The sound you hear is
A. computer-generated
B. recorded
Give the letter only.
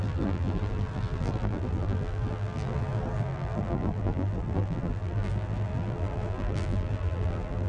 A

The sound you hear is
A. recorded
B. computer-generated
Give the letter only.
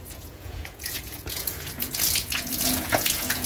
B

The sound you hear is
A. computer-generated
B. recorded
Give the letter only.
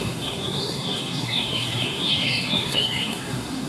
A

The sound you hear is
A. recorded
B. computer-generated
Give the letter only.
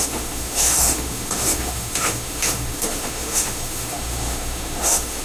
B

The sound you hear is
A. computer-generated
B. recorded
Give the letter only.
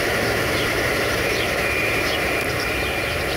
A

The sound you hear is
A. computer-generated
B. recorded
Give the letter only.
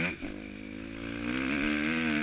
B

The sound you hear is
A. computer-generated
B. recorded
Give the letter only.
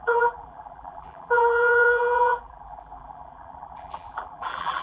A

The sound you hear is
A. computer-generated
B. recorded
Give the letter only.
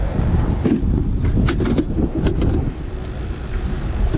B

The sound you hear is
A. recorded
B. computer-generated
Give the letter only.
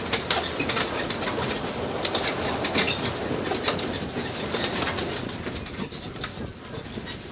A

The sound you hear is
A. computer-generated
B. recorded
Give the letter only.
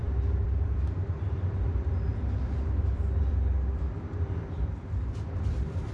A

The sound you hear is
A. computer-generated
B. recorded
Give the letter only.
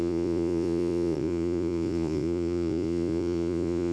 A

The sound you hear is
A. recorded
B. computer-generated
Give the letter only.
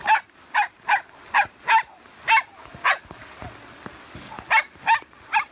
A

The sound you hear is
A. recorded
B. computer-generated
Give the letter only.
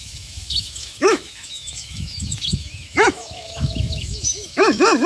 B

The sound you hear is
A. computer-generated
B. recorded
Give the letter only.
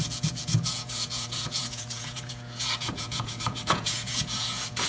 A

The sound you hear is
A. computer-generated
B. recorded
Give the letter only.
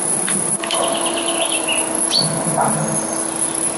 B